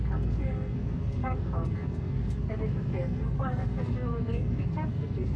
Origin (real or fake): fake